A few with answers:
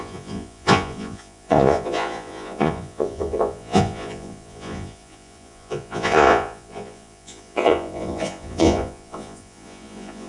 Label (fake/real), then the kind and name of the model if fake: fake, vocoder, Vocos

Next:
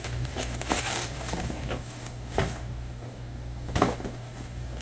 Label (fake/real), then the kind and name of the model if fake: fake, codec, DAC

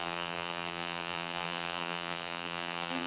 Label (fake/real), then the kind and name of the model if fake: fake, vocoder, BigVGAN v2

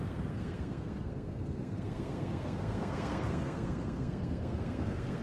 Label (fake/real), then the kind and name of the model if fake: fake, codec, SNAC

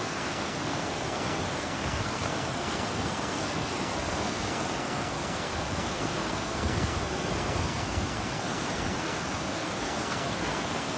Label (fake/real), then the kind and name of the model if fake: fake, codec, SNAC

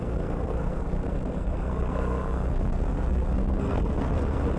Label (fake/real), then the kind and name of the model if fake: fake, codec, SNAC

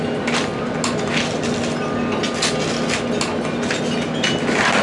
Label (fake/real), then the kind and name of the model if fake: real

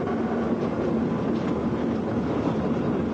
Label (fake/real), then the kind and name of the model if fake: real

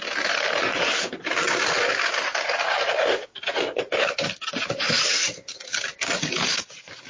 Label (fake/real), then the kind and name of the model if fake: real